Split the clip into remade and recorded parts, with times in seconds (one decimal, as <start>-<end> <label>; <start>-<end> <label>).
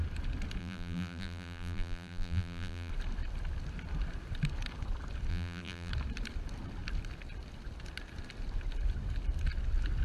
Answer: 0.0-0.6 recorded; 0.6-2.9 remade; 2.9-5.3 recorded; 5.3-5.9 remade; 5.9-10.0 recorded